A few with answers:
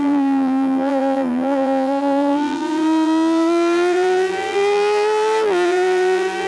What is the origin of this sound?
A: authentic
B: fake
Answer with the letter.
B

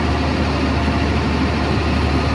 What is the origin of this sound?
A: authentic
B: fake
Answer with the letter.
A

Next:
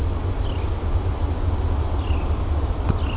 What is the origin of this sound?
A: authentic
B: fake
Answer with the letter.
A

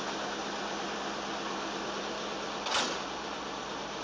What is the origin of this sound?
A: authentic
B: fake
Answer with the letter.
A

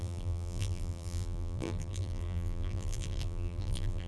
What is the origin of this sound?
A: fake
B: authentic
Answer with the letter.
A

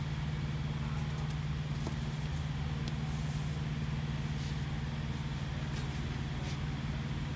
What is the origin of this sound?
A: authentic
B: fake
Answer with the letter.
A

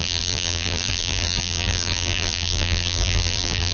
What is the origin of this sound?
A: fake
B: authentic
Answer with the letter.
A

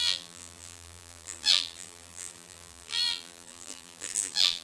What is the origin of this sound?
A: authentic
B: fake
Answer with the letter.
B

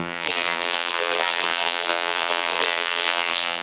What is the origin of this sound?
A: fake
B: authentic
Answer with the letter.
A